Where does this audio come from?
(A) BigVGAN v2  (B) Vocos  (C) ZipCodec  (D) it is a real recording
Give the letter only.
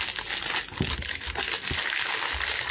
D